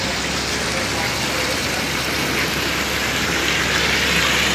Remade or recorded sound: recorded